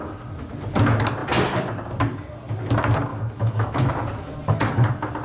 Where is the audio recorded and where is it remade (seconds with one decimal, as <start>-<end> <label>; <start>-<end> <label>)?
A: 0.0-3.1 recorded; 3.1-3.9 remade; 3.9-5.2 recorded